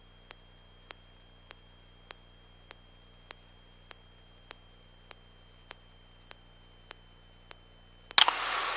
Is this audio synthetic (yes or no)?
no